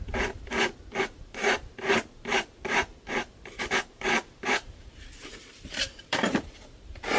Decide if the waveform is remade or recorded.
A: remade